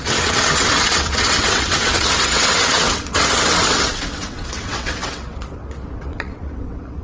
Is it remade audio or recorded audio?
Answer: remade